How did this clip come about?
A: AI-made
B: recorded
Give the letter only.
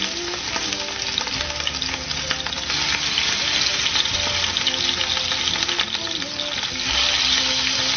B